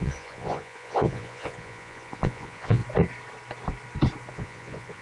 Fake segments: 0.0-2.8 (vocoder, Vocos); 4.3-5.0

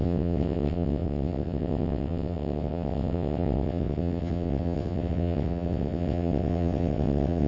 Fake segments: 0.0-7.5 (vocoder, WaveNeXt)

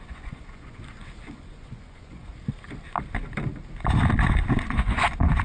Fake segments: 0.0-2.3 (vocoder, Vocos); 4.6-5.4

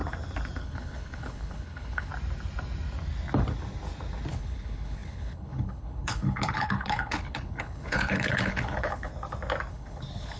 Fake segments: 0.6-2.1 (codec, HILCodec); 4.3-9.1; 9.7-10.4

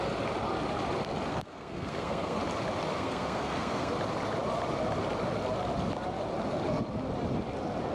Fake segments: 1.3-2.4 (codec, SNAC); 2.9-3.9

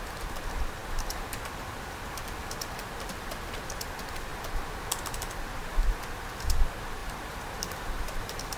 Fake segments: 7.0-8.6 (vocoder, BigVGAN v2)

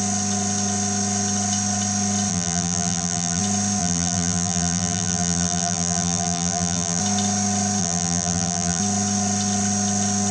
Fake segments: 2.3-3.4 (vocoder, BigVGAN v2); 3.8-7.0; 7.8-8.8